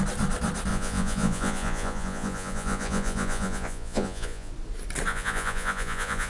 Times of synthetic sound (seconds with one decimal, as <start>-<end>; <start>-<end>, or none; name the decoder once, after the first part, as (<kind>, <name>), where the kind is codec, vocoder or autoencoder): 0.7-4.5 (vocoder, Vocos); 5.1-6.3